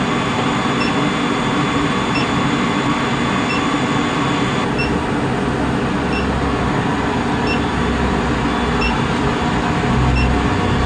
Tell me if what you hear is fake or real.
real